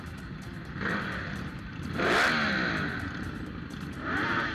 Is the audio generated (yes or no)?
no